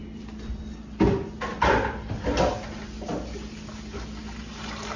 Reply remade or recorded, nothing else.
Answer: recorded